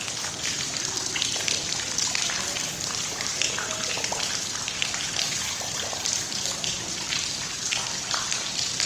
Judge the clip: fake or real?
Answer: real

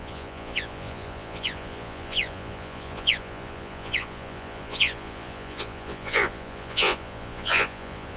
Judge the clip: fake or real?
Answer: fake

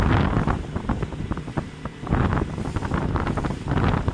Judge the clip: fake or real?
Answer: real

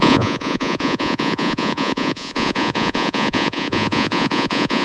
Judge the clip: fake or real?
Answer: fake